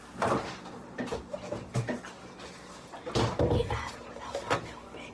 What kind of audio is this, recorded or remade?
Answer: recorded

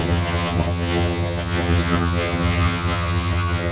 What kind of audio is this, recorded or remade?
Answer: remade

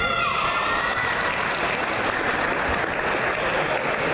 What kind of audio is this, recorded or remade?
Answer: recorded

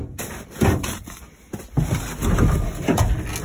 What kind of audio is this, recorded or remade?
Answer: recorded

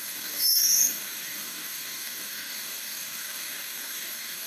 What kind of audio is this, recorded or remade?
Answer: remade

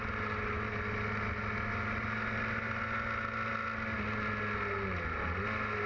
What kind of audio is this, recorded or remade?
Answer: recorded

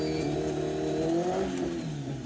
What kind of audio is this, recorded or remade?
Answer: recorded